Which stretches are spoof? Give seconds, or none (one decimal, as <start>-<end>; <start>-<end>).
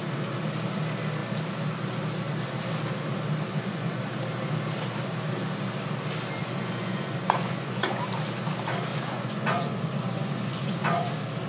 3.5-4.0; 6.4-8.0; 8.9-11.1